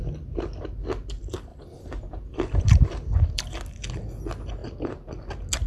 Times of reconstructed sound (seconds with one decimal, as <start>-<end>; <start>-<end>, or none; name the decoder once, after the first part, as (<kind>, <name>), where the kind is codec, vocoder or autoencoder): 1.5-3.4 (vocoder, BigVGAN v2)